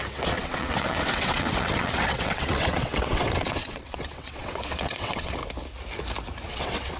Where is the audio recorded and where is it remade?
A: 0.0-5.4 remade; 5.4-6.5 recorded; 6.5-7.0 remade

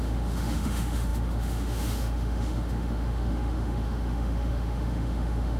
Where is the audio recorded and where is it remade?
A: 0.0-5.6 remade

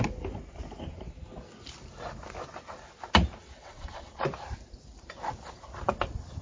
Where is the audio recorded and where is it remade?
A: 0.0-3.4 recorded; 3.4-4.1 remade; 4.1-6.4 recorded

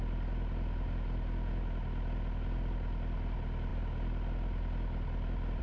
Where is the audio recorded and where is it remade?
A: 0.0-5.6 recorded

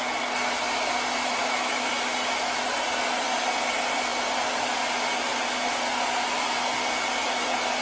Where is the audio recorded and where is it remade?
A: 0.0-1.4 recorded; 1.4-1.9 remade; 1.9-7.8 recorded

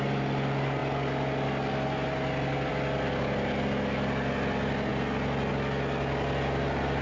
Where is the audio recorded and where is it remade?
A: 0.0-7.0 recorded

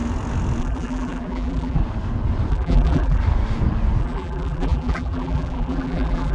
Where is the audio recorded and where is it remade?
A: 0.0-0.6 recorded; 0.6-1.8 remade; 1.8-2.5 recorded; 2.5-3.2 remade; 3.2-4.0 recorded; 4.0-6.3 remade

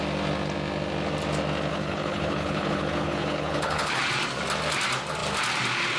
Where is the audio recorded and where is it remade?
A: 0.0-1.7 recorded; 1.7-4.0 remade; 4.0-6.0 recorded